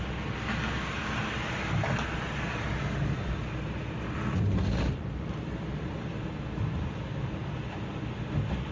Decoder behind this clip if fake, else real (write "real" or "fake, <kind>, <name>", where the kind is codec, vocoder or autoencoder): real